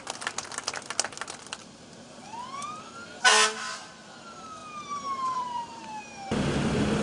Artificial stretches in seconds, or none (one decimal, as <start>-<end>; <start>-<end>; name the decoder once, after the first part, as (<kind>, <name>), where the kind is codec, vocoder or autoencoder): 1.6-2.2 (vocoder, BigVGAN v2); 4.6-6.0